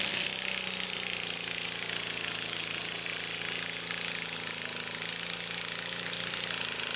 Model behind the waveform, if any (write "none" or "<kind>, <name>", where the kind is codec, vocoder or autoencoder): none